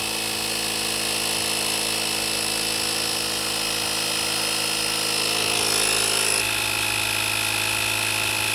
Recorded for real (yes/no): yes